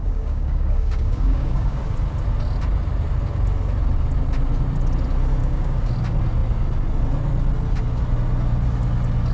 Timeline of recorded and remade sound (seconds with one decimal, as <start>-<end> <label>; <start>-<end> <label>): 0.0-1.8 remade; 1.8-5.4 recorded; 5.4-5.9 remade; 5.9-9.3 recorded